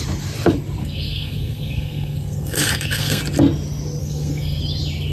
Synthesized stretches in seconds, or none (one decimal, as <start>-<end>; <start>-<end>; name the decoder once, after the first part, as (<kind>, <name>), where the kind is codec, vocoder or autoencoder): 0.8-3.2 (codec, SNAC); 4.0-4.6